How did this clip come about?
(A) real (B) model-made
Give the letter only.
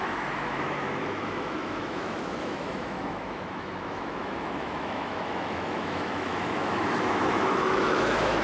B